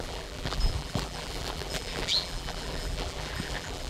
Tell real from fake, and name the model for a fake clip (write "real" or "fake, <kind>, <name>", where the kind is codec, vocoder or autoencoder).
fake, vocoder, BigVGAN v2